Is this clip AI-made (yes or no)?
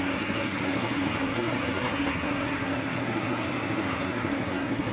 yes